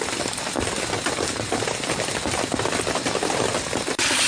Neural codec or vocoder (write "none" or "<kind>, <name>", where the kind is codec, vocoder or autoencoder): none